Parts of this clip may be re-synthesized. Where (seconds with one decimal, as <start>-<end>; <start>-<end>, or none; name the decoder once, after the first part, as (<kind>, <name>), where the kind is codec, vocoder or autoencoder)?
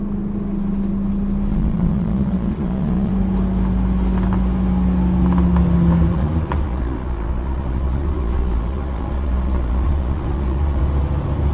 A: 1.5-3.1 (vocoder, Vocos); 6.1-10.8